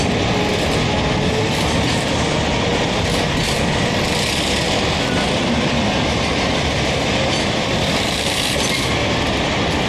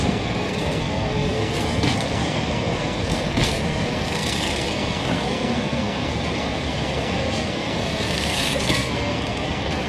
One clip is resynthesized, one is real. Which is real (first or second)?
first